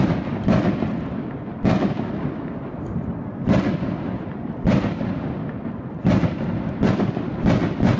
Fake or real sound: real